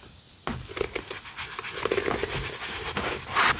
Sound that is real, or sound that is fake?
real